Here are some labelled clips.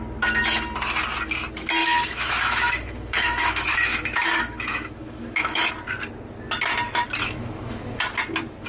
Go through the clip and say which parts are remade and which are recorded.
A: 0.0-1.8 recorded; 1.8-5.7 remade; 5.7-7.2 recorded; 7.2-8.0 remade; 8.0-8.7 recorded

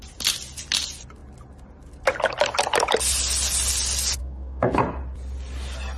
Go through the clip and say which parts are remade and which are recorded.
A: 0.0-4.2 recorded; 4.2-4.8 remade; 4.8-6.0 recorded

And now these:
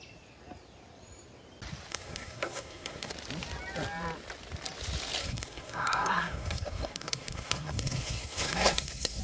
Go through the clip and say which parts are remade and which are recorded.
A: 0.0-1.9 recorded; 1.9-3.1 remade; 3.1-5.2 recorded; 5.2-9.2 remade

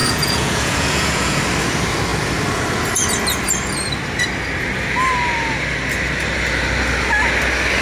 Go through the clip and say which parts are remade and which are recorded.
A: 0.0-1.4 remade; 1.4-7.8 recorded